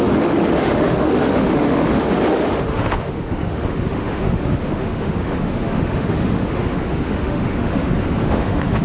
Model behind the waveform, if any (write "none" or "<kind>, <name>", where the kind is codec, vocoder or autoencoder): autoencoder, DAC-VAE